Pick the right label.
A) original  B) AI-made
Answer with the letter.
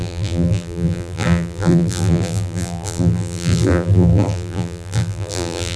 B